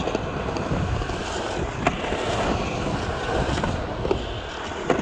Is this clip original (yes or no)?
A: yes